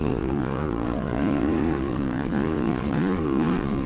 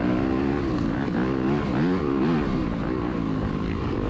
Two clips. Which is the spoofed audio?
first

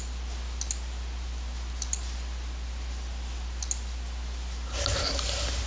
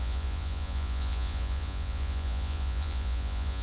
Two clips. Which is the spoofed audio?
second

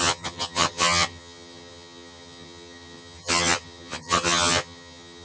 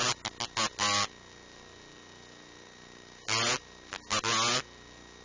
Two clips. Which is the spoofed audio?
first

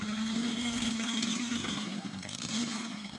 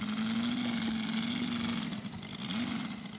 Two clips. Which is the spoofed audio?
first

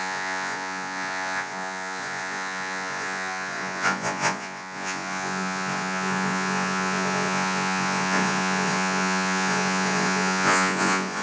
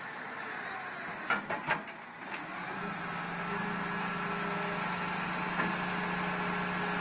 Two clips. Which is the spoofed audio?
first